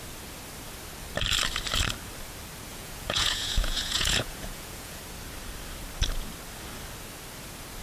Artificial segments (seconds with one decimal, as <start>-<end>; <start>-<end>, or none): 2.7-5.0